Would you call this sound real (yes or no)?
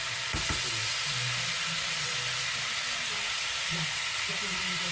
yes